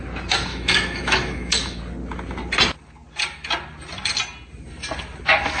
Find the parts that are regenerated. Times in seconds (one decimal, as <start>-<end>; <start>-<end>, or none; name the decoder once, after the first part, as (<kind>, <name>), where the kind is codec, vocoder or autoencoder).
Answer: 0.5-1.8 (autoencoder, DAC-VAE)

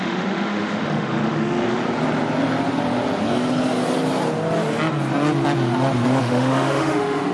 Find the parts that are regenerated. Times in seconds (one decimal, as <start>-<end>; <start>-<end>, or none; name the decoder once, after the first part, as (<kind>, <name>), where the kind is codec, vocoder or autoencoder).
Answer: 0.0-1.8 (autoencoder, DAC-VAE); 6.2-7.3

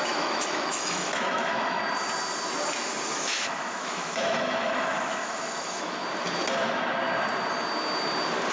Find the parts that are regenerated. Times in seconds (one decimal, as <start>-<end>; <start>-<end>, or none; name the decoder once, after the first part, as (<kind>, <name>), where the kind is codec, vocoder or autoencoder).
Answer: 0.0-1.8 (autoencoder, DAC-VAE); 3.1-6.0

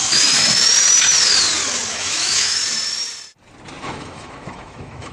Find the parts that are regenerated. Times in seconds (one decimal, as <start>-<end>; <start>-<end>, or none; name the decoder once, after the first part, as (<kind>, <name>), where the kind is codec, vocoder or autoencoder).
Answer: 0.0-0.7 (autoencoder, DAC-VAE); 1.9-2.6; 3.8-5.1

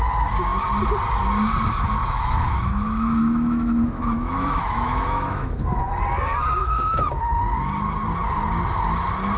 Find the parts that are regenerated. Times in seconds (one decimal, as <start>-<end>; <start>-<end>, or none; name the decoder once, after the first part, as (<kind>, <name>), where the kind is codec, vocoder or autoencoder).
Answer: 2.0-5.8 (autoencoder, DAC-VAE); 6.6-7.2

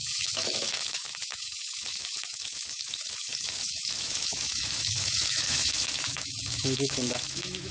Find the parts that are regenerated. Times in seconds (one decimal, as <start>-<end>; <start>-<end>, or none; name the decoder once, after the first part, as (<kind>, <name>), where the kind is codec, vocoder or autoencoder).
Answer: 0.0-7.7 (autoencoder, DAC-VAE)

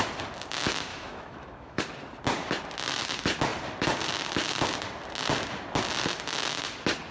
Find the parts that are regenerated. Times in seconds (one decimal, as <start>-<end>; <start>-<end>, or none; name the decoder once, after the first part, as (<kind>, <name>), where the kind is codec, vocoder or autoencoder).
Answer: 0.9-1.8 (autoencoder, DAC-VAE)